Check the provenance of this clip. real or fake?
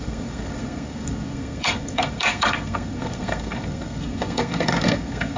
fake